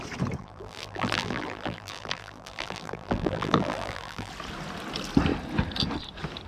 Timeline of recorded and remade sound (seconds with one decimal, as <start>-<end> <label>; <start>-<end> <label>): 0.0-0.4 recorded; 0.4-4.3 remade; 4.3-6.5 recorded